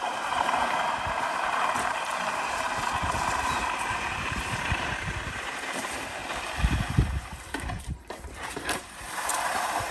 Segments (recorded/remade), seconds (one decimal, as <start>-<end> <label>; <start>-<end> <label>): 0.0-6.2 remade; 6.2-7.8 recorded; 7.8-9.3 remade; 9.3-9.9 recorded